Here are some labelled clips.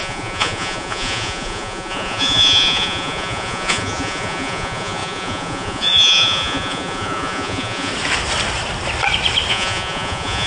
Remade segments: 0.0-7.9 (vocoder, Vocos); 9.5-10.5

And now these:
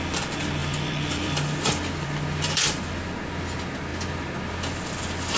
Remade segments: 0.6-2.8 (vocoder, BigVGAN v2)

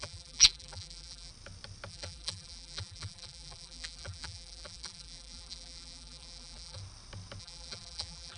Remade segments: 0.0-1.3 (vocoder, BigVGAN v2); 1.9-6.8; 7.4-8.4

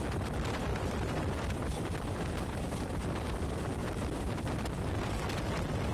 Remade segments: 0.7-3.1 (vocoder, BigVGAN v2)

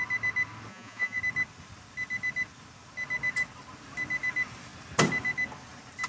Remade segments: 0.7-1.2 (vocoder, Vocos)